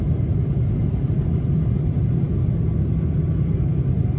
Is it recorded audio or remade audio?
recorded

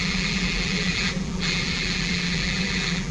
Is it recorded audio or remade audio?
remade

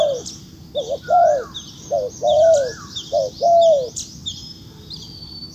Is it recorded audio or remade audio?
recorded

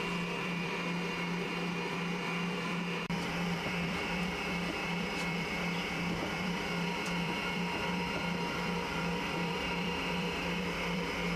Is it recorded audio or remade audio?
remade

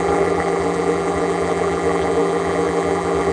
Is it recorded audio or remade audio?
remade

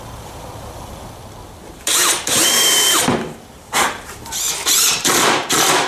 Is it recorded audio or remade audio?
remade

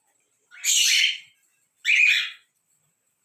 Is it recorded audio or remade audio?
remade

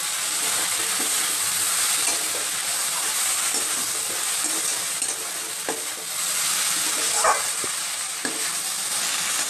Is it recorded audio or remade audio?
recorded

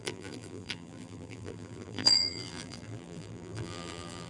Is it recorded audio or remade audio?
remade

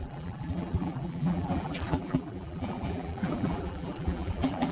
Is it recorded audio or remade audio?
remade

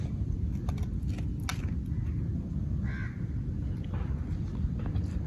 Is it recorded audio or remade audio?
recorded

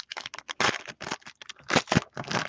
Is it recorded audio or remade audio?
recorded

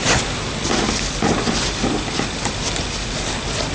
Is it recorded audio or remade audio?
recorded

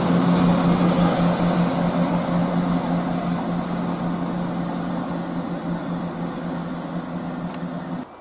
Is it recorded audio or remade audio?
recorded